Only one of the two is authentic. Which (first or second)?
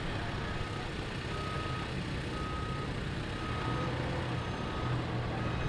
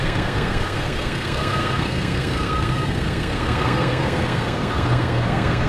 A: first